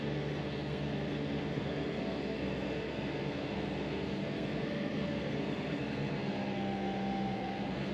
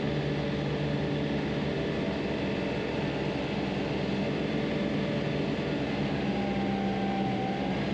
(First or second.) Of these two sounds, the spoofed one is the first